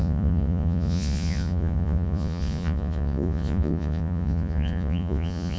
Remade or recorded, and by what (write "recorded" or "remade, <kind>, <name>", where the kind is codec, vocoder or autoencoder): remade, vocoder, Vocos